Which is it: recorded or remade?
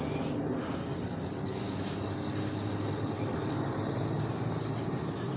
recorded